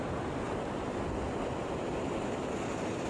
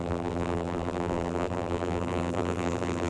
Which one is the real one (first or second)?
first